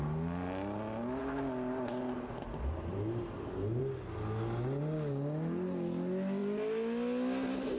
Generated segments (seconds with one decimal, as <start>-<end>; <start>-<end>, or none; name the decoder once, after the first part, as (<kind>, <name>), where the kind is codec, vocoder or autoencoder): none